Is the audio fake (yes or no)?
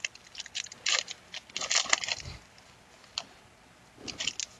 no